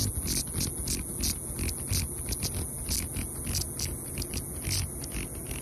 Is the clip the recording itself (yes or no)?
yes